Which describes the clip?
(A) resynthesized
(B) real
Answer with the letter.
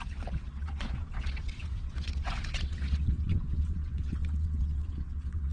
A